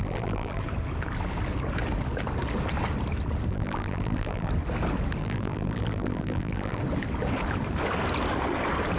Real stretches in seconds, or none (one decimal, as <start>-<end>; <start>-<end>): 0.6-3.5; 4.5-5.2; 6.8-9.0